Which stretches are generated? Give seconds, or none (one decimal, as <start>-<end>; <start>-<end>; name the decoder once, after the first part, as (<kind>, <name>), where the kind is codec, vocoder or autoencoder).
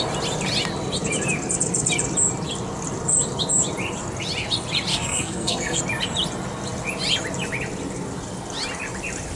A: 4.9-5.8 (codec, SNAC)